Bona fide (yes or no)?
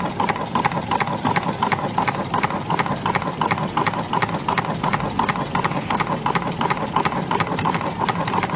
yes